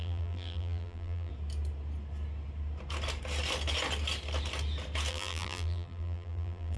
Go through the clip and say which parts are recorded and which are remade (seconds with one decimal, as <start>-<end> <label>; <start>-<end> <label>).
0.0-1.3 remade; 1.3-5.1 recorded; 5.1-6.8 remade